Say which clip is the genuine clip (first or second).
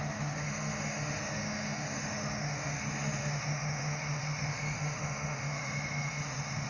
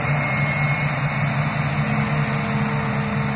second